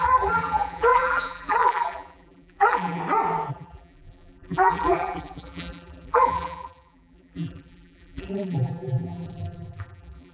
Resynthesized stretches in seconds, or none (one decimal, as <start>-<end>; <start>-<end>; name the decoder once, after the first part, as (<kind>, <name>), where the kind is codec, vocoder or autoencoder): 0.0-3.0 (vocoder, BigVGAN v2); 3.5-10.3